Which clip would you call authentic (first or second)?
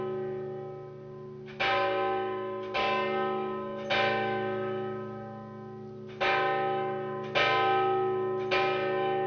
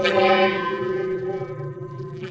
first